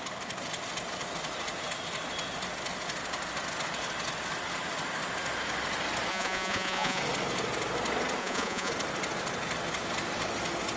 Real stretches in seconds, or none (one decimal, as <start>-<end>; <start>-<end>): 0.0-6.1; 7.0-8.2; 8.7-10.8